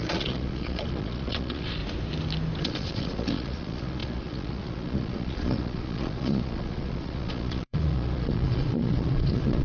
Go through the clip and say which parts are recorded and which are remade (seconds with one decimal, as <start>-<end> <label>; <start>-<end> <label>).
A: 0.0-1.8 remade; 1.8-2.6 recorded; 2.6-9.6 remade

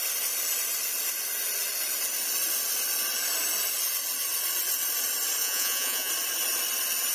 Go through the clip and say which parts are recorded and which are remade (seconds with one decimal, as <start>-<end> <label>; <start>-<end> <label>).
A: 0.0-5.4 recorded; 5.4-6.1 remade; 6.1-7.1 recorded

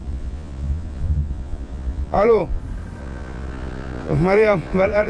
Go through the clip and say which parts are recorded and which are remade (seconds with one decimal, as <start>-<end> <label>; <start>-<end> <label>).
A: 0.0-2.6 remade; 2.6-3.0 recorded; 3.0-5.1 remade

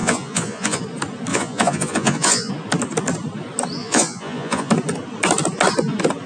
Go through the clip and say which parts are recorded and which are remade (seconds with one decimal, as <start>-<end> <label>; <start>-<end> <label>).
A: 0.0-0.8 remade; 0.8-1.3 recorded; 1.3-2.5 remade; 2.5-3.8 recorded; 3.8-4.7 remade; 4.7-6.3 recorded

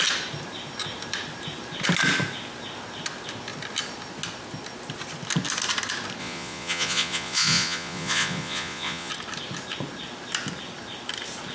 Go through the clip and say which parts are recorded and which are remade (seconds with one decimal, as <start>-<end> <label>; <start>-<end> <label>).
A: 0.0-6.2 recorded; 6.2-9.1 remade; 9.1-11.5 recorded

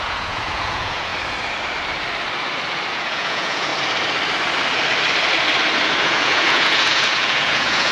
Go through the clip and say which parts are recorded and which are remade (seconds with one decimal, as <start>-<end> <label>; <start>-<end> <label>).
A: 0.0-1.1 remade; 1.1-2.9 recorded; 2.9-3.7 remade; 3.7-6.0 recorded; 6.0-7.9 remade

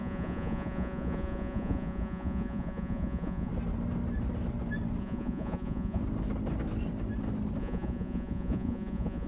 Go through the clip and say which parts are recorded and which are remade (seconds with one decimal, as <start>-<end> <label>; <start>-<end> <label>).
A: 0.0-3.5 remade; 3.5-5.0 recorded; 5.0-6.0 remade; 6.0-7.6 recorded; 7.6-9.3 remade